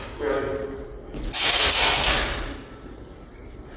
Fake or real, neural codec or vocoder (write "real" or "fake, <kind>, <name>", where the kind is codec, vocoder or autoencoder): real